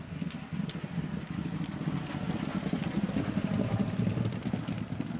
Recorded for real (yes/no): yes